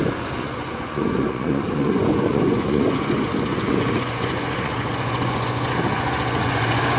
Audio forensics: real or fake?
fake